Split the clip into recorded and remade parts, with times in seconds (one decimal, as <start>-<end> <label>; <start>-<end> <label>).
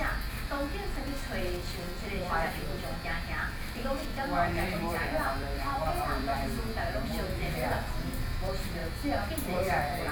0.0-8.8 remade; 8.8-9.3 recorded; 9.3-10.1 remade